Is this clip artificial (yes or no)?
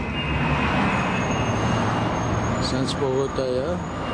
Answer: no